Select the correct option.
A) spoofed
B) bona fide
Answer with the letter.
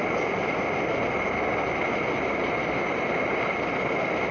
B